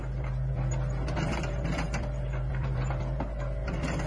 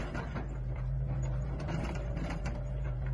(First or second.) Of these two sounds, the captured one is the first